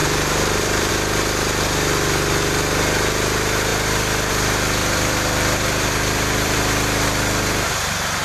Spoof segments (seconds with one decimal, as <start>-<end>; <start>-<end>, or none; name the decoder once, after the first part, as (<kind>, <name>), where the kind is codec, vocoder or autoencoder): 0.0-0.9 (vocoder, BigVGAN v2); 4.8-6.6